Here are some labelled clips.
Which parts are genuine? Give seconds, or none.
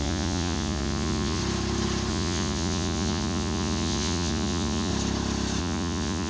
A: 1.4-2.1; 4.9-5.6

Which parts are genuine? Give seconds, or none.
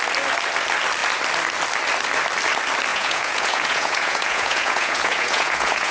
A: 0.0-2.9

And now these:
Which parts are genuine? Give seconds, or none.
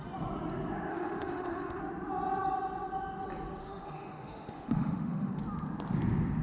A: 0.0-0.9; 1.8-3.6; 5.4-6.4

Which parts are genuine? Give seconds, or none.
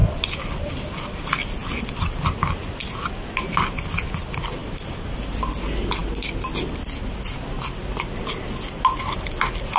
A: 0.8-1.6; 2.9-4.6; 5.6-9.8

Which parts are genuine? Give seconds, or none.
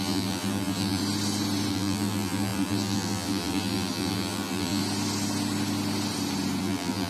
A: 1.0-1.7; 4.8-6.6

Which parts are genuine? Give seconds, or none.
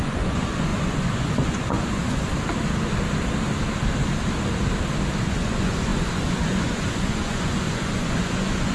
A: 2.3-5.2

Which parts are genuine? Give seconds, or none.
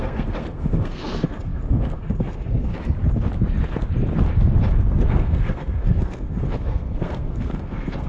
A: 2.7-4.7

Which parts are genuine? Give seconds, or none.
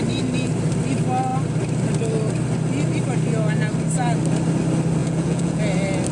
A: 0.0-5.0; 5.6-6.1